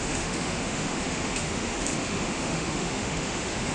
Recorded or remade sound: remade